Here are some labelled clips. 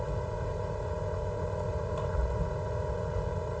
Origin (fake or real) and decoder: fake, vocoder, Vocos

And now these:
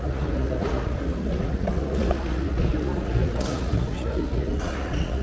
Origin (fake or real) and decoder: fake, vocoder, Vocos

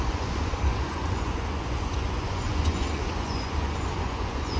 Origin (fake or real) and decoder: fake, vocoder, Vocos